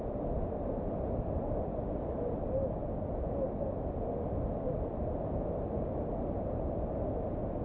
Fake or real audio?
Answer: real